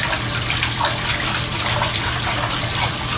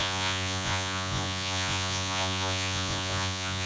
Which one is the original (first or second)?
first